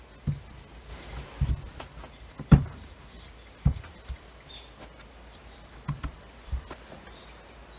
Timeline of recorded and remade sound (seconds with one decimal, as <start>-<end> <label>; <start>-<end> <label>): 0.0-7.8 recorded